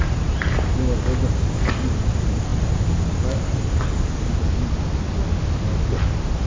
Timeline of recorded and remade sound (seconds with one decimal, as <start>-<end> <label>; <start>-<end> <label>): 0.0-6.5 recorded